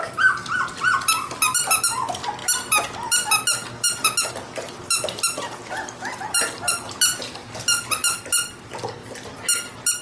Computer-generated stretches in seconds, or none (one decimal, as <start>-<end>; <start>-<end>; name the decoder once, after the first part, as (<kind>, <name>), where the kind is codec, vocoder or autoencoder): none